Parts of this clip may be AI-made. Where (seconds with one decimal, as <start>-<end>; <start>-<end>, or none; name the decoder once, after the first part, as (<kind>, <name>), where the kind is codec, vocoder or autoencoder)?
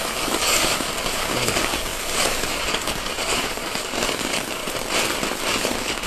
0.0-4.6 (codec, DAC); 5.6-6.1